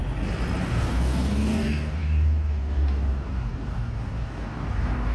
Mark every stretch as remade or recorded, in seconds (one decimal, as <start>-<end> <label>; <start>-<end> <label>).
0.0-0.6 recorded; 0.6-5.1 remade